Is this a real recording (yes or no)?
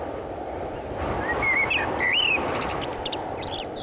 no